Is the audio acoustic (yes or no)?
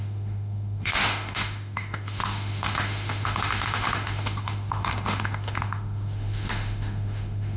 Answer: no